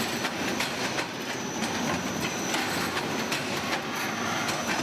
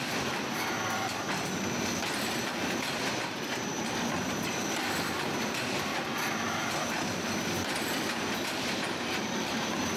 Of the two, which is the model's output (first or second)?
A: second